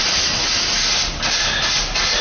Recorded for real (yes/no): yes